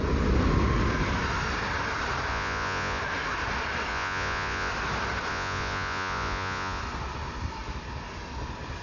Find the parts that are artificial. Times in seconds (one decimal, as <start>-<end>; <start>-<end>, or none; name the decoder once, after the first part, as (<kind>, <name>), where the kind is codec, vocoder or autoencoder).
2.3-3.0 (vocoder, Vocos); 3.9-4.7; 5.3-6.8

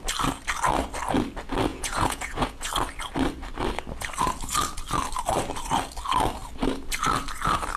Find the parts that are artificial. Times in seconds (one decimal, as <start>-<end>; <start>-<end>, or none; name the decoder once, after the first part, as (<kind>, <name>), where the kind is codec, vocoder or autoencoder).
1.7-2.7 (vocoder, Vocos)

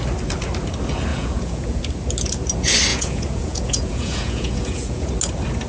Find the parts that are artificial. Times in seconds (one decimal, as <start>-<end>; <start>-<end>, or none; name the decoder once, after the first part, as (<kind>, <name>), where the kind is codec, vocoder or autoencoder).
1.1-1.8 (vocoder, Vocos); 2.9-5.1

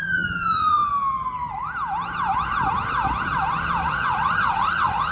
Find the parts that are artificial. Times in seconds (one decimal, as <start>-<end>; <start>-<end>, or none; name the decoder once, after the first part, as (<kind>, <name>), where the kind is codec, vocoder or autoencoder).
0.0-0.8 (vocoder, Vocos); 3.9-5.1

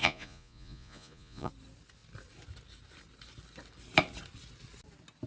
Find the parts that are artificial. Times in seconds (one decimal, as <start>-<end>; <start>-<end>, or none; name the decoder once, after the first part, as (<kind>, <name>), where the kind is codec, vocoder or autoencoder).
0.0-1.5 (vocoder, Vocos)

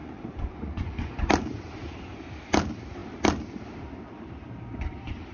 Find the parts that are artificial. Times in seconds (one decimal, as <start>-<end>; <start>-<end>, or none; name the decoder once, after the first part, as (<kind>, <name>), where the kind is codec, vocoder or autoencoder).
0.0-1.1 (vocoder, Vocos)